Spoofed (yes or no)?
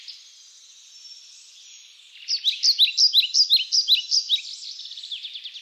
no